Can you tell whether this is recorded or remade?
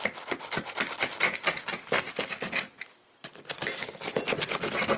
recorded